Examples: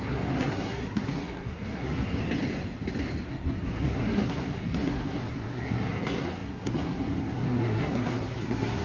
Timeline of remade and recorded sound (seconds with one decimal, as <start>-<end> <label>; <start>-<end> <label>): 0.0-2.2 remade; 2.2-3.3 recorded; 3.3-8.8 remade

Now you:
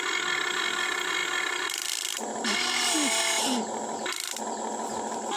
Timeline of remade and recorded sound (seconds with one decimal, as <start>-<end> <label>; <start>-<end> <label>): 0.0-5.4 recorded

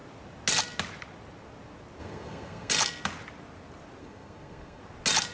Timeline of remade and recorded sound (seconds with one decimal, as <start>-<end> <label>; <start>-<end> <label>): 0.0-2.0 recorded; 2.0-2.7 remade; 2.7-4.0 recorded; 4.0-4.8 remade; 4.8-5.3 recorded

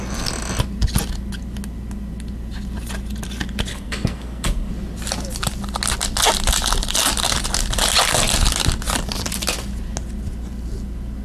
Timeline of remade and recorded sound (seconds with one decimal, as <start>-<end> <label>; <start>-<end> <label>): 0.0-3.7 recorded; 3.7-4.7 remade; 4.7-11.2 recorded

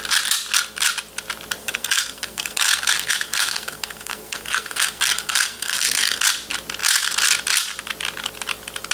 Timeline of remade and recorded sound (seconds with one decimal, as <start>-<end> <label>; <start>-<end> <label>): 0.0-1.6 recorded; 1.6-6.2 remade; 6.2-8.9 recorded

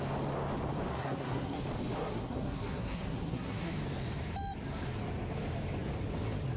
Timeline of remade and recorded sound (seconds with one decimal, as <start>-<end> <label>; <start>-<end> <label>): 0.0-0.9 recorded; 0.9-1.6 remade; 1.6-2.0 recorded; 2.0-3.7 remade; 3.7-6.6 recorded

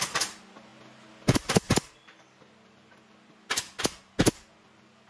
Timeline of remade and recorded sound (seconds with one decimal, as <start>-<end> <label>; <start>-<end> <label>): 0.0-5.1 recorded